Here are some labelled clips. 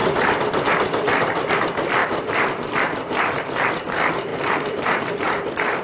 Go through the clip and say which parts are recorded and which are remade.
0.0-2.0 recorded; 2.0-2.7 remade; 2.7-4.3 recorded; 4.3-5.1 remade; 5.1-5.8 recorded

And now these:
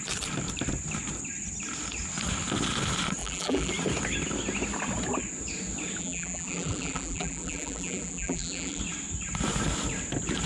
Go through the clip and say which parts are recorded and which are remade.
0.0-3.2 recorded; 3.2-3.7 remade; 3.7-6.0 recorded; 6.0-8.8 remade; 8.8-10.5 recorded